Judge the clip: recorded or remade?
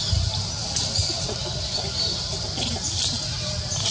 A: recorded